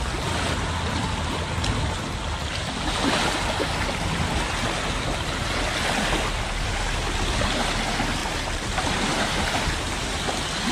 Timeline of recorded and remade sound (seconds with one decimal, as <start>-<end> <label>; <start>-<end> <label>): 0.0-10.7 recorded